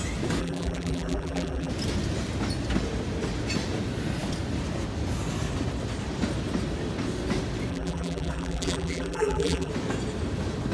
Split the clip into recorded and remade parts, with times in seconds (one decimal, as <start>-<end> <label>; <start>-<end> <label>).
0.0-0.4 recorded; 0.4-1.7 remade; 1.7-7.7 recorded; 7.7-9.7 remade; 9.7-10.7 recorded